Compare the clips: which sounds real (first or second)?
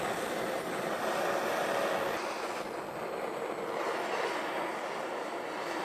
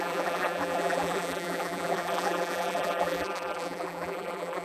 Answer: first